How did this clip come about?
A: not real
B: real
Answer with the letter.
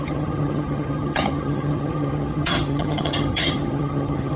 A